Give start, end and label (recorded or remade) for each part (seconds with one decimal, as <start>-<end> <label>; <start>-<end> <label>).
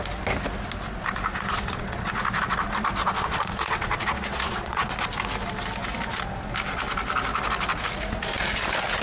0.0-1.3 recorded; 1.3-2.1 remade; 2.1-3.0 recorded; 3.0-4.9 remade; 4.9-9.0 recorded